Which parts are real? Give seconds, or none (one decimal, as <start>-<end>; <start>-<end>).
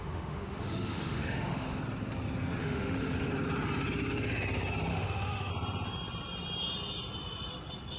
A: 1.8-2.6; 3.3-4.9; 5.5-8.0